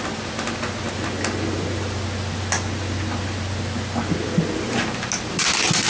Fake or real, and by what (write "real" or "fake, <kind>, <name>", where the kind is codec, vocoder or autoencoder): real